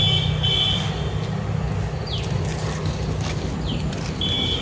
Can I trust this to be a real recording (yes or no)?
yes